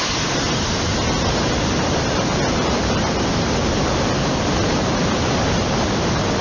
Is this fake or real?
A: real